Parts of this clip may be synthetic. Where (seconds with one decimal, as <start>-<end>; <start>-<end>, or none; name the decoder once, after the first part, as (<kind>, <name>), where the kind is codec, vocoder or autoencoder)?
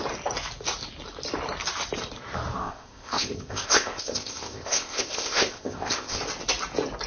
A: 2.6-6.2 (codec, ZipCodec)